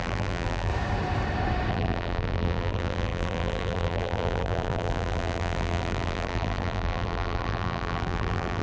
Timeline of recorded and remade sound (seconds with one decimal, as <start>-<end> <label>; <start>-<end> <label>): 0.0-0.7 remade; 0.7-1.7 recorded; 1.7-8.6 remade